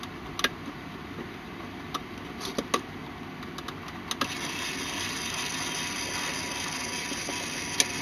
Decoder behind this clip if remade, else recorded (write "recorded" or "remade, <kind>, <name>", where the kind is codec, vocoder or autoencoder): recorded